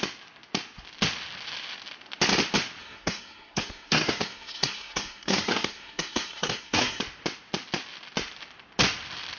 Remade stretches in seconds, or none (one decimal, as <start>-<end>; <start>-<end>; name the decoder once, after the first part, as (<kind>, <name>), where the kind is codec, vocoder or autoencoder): 2.8-7.0 (codec, SNAC)